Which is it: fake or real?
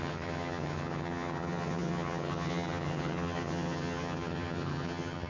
fake